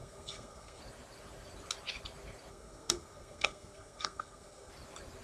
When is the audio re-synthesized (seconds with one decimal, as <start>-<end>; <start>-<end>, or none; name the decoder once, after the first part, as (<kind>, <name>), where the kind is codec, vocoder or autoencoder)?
0.0-0.8 (codec, SNAC); 2.5-4.7